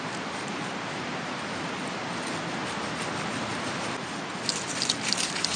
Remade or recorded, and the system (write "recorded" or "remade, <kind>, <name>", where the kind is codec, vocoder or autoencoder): recorded